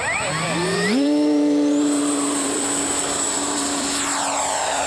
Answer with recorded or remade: remade